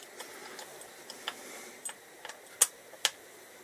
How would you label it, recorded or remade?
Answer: recorded